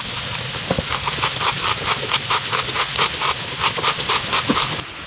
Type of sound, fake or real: real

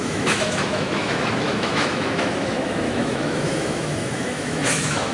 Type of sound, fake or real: fake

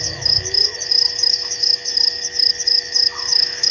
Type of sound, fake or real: fake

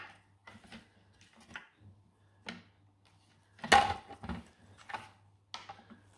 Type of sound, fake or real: real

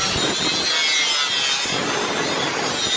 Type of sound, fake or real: real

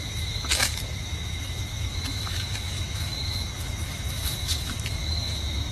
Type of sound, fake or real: fake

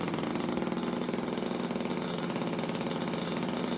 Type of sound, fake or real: real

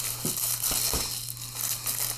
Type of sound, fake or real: real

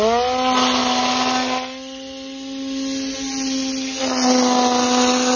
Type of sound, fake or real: real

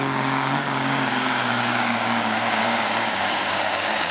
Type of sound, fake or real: fake